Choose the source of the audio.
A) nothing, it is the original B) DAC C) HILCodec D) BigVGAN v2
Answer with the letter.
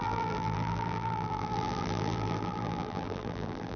D